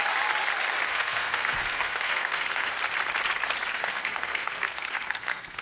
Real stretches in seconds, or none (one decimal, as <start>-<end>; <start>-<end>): 0.0-0.9; 2.7-3.7